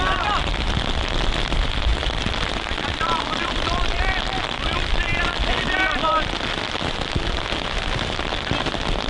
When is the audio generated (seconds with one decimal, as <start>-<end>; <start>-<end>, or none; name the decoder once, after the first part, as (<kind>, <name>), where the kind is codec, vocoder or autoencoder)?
1.9-6.8 (vocoder, BigVGAN v2)